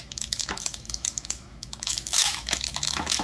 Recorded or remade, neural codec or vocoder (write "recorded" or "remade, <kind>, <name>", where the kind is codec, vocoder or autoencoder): remade, autoencoder, DAC-VAE